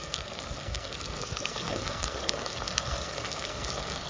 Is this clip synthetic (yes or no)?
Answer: yes